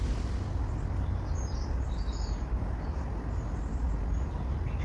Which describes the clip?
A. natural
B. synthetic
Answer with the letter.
A